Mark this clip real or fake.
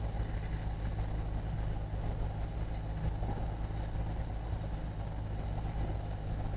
real